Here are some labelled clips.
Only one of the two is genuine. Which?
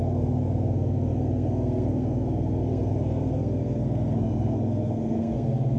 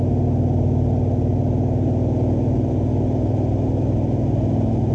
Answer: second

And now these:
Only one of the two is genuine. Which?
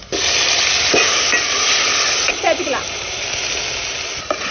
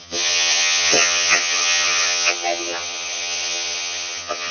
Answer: first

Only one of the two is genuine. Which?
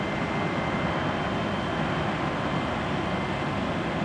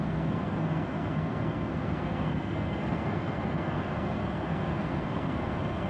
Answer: first